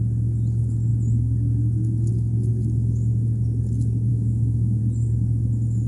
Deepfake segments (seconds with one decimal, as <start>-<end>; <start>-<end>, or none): 4.1-4.8